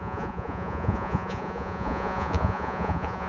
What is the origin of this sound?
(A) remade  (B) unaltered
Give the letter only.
A